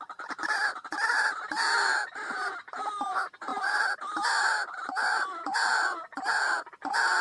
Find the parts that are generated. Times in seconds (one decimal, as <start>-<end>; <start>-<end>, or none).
3.5-4.9

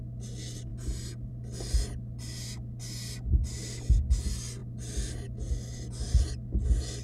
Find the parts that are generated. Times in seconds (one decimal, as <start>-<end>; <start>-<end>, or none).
none

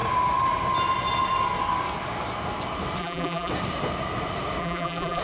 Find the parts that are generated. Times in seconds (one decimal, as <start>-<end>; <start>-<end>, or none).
3.0-3.5; 4.6-5.2

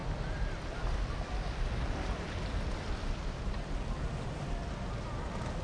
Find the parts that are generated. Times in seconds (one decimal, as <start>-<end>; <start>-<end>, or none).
none

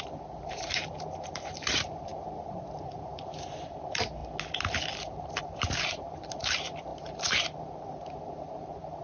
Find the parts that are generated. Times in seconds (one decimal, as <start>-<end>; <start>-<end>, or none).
0.0-4.2; 5.4-9.0

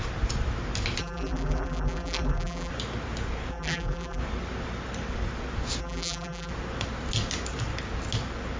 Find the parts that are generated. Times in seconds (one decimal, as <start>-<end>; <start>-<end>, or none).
1.0-2.7; 3.5-4.2; 5.8-6.5

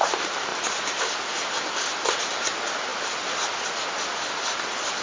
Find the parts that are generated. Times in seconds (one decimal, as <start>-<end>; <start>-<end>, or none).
none

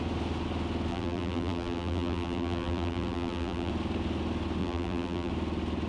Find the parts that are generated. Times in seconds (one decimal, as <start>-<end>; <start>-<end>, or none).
0.9-3.7; 4.6-5.3